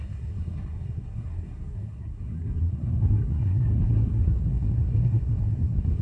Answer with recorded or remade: remade